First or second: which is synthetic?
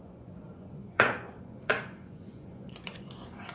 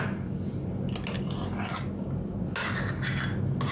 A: first